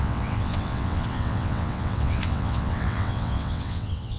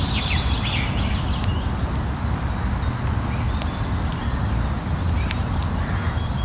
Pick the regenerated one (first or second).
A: first